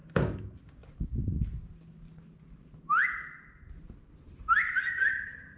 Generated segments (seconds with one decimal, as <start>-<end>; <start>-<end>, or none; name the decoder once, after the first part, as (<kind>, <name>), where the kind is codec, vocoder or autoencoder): none

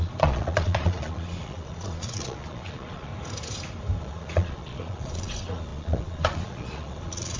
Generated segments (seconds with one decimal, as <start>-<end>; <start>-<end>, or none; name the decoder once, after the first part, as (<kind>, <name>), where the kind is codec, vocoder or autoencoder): 0.0-3.1 (vocoder, Vocos); 4.0-7.4

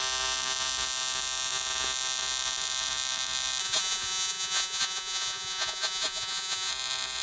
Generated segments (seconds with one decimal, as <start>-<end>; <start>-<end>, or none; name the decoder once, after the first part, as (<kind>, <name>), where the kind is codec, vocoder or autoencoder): 3.6-6.7 (vocoder, Vocos)

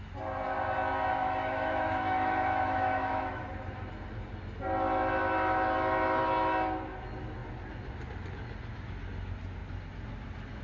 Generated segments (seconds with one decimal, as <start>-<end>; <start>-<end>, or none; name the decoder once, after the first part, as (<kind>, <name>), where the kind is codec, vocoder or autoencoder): 1.1-3.4 (autoencoder, DAC-VAE)